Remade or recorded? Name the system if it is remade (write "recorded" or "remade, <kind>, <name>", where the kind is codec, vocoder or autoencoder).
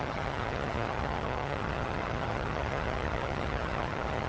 remade, vocoder, HiFi-GAN